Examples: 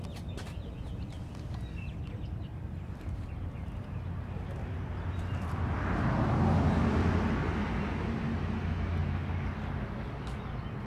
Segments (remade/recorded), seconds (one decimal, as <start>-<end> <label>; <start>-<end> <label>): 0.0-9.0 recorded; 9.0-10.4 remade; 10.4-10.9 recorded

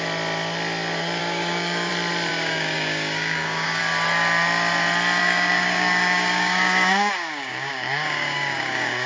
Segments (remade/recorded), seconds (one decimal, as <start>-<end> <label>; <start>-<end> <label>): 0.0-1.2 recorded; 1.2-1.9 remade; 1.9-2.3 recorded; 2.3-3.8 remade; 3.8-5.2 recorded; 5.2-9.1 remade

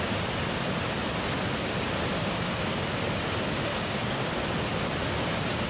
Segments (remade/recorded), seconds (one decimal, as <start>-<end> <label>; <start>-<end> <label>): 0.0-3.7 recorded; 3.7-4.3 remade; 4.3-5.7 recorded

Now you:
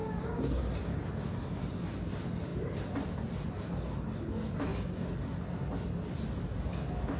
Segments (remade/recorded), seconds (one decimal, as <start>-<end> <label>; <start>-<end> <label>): 0.0-1.0 remade; 1.0-7.2 recorded